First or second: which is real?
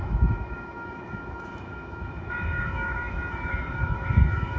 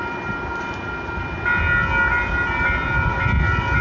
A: second